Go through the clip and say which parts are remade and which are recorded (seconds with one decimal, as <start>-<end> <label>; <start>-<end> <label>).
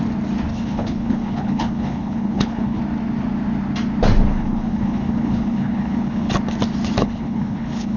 0.0-0.5 recorded; 0.5-2.8 remade; 2.8-4.3 recorded; 4.3-6.3 remade; 6.3-7.0 recorded; 7.0-8.0 remade